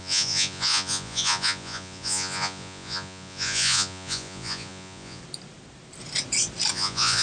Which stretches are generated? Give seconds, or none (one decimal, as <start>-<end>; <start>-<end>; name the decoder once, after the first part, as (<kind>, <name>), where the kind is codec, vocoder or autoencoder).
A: 0.0-5.2 (vocoder, Vocos); 6.7-7.2